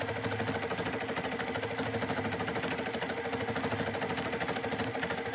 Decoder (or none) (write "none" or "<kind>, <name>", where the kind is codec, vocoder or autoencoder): none